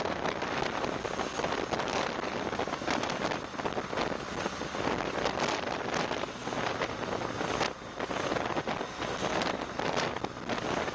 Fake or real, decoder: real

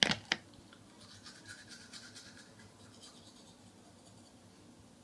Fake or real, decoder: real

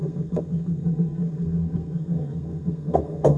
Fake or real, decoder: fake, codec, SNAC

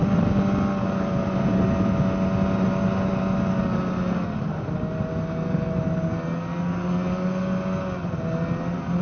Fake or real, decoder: real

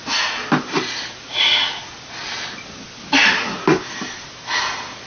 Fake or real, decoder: real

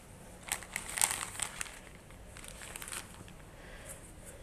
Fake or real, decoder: real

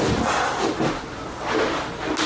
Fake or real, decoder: real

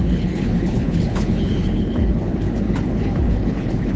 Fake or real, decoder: fake, codec, HILCodec